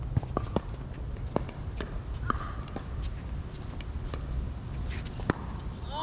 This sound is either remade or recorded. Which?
recorded